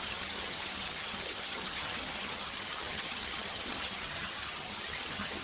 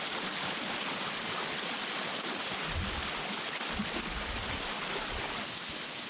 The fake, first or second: first